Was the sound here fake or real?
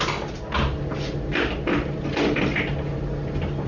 real